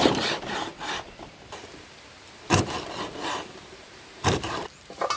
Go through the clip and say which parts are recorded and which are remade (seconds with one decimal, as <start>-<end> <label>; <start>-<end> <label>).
0.0-0.7 remade; 0.7-3.6 recorded; 3.6-5.2 remade